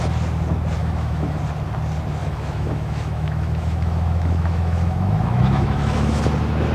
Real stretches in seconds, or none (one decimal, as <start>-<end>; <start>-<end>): 0.0-0.8; 1.4-2.2; 6.2-6.7